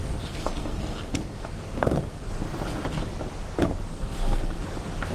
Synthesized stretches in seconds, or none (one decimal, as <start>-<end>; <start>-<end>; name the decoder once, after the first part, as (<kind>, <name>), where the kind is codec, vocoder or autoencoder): 0.0-2.3 (codec, SNAC); 3.9-4.6